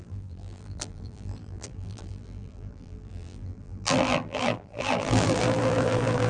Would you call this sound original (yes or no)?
no